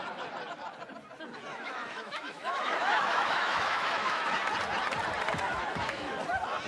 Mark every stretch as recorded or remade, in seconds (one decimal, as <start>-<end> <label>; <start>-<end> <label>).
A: 0.0-1.5 recorded; 1.5-4.3 remade; 4.3-5.5 recorded; 5.5-6.2 remade; 6.2-6.7 recorded